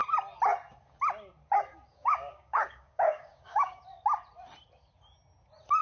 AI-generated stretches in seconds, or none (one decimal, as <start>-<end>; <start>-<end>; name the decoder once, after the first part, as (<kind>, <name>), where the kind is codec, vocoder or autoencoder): 1.9-3.8 (codec, DAC)

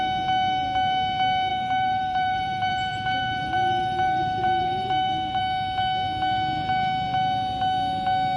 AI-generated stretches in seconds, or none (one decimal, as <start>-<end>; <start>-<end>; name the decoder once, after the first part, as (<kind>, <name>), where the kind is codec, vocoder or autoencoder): 1.5-5.4 (vocoder, BigVGAN v2)

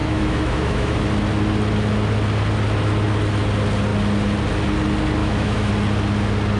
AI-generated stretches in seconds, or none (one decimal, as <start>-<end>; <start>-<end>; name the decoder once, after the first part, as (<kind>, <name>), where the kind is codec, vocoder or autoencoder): 0.0-1.0 (autoencoder, DAC-VAE); 5.2-5.7

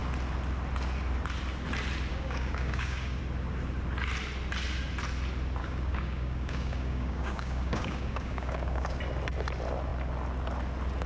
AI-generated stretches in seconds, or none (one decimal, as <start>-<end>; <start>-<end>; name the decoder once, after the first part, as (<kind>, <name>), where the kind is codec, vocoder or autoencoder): 2.1-3.2 (codec, DAC); 5.6-9.0